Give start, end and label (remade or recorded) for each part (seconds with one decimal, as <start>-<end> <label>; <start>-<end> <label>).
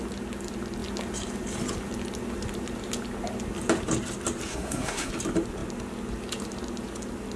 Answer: 0.0-4.5 recorded; 4.5-5.1 remade; 5.1-7.4 recorded